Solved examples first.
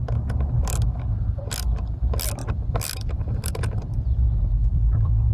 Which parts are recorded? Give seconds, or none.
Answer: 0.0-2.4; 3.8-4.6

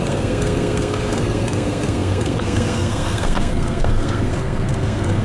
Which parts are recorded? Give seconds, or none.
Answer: none